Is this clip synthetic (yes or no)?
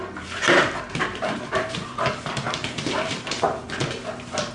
yes